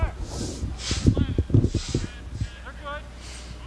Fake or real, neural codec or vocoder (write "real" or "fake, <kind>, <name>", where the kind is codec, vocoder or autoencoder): real